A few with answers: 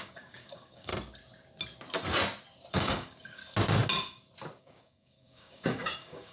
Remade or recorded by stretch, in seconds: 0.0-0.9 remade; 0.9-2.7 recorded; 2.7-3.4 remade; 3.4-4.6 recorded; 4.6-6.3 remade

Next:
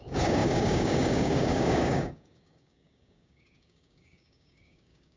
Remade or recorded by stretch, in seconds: 0.0-5.2 remade

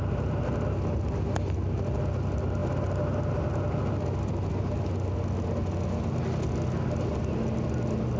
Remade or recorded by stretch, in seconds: 0.0-8.2 recorded

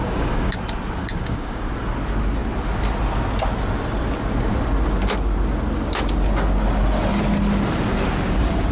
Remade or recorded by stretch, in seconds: 0.0-0.6 remade; 0.6-1.0 recorded; 1.0-1.6 remade; 1.6-8.7 recorded

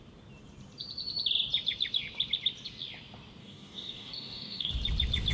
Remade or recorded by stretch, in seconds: 0.0-3.4 recorded; 3.4-4.7 remade; 4.7-5.3 recorded

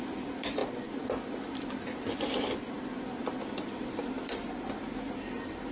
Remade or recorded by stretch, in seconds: 0.0-5.7 recorded

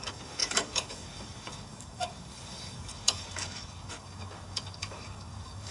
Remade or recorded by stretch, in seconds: 0.0-5.7 remade